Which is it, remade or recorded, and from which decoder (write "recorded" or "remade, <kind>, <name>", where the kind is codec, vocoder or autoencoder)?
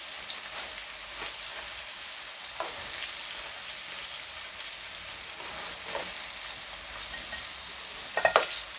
recorded